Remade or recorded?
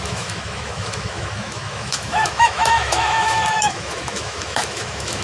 remade